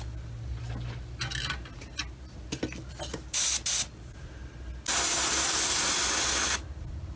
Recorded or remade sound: recorded